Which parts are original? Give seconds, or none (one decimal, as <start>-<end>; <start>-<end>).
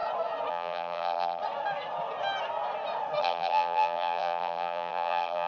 0.0-0.5; 1.4-3.2